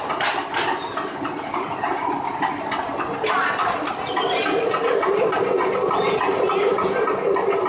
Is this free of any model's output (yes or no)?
yes